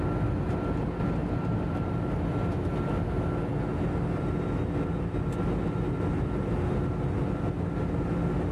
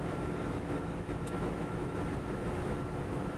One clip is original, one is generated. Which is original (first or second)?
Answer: first